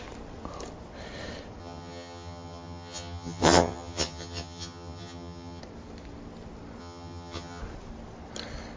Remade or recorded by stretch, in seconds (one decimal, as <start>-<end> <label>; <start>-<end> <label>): 0.0-1.6 recorded; 1.6-5.6 remade; 5.6-6.8 recorded; 6.8-7.6 remade; 7.6-8.8 recorded